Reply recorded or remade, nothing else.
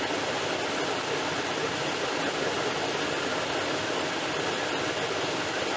recorded